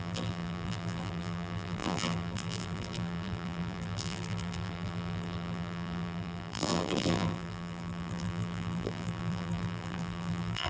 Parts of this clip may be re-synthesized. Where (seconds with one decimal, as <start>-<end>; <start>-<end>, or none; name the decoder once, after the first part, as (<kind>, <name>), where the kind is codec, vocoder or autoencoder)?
0.0-10.7 (vocoder, BigVGAN v2)